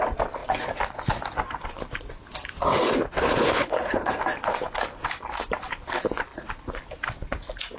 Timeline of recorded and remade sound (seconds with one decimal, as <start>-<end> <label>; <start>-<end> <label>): 0.0-3.2 recorded; 3.2-4.1 remade; 4.1-7.8 recorded